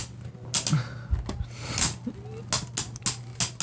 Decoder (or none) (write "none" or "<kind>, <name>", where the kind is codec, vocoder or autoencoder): none